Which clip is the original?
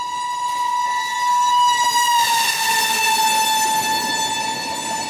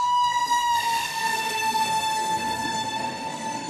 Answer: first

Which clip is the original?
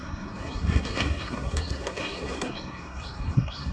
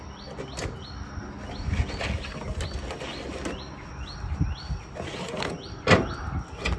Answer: second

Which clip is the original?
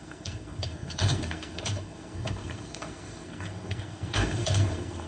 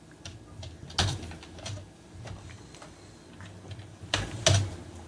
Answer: second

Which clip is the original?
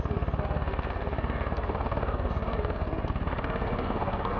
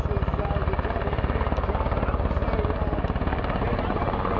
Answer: second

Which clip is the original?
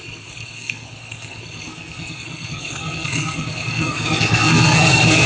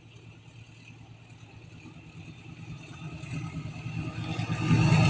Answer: second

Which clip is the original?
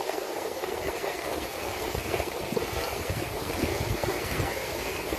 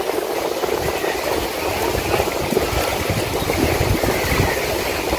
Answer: second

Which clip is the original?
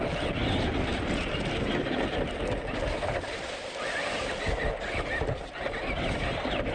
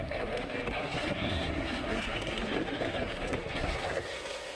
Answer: first